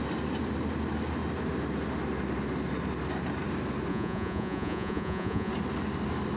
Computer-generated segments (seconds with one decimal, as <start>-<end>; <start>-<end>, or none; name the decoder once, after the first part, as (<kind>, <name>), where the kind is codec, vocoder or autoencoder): 3.9-5.5 (vocoder, Vocos)